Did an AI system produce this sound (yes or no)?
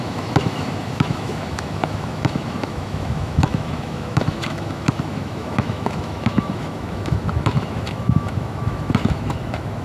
yes